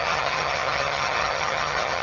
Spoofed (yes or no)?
yes